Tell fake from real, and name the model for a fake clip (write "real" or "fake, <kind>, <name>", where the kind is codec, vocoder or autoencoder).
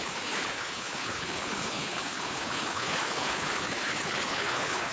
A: fake, codec, HILCodec